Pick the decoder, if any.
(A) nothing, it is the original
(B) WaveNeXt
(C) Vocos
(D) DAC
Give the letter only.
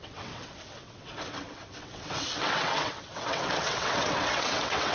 B